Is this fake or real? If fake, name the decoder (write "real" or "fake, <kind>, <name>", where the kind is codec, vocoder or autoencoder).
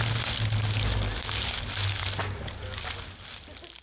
real